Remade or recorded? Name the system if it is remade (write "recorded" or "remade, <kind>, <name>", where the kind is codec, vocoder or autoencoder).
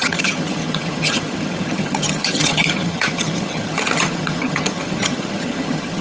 remade, vocoder, HiFi-GAN